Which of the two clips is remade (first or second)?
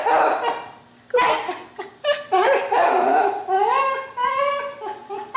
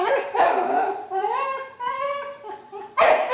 second